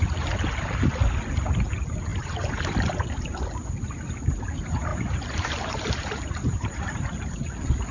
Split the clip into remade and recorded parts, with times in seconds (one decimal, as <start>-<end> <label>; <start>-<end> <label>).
0.0-2.1 recorded; 2.1-3.7 remade; 3.7-4.9 recorded; 4.9-6.8 remade; 6.8-7.9 recorded